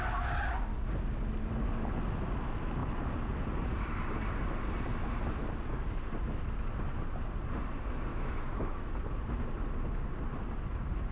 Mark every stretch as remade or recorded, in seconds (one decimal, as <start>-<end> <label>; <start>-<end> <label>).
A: 0.0-8.1 recorded; 8.1-8.9 remade; 8.9-11.1 recorded